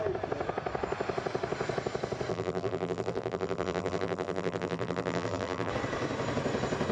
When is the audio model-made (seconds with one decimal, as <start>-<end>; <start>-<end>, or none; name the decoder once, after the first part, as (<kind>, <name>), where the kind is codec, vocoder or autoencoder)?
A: 2.3-5.7 (vocoder, BigVGAN v2)